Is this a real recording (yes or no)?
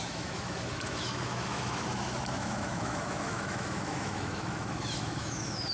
no